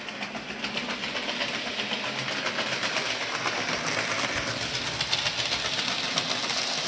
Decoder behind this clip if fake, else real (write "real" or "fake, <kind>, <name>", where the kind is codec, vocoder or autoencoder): real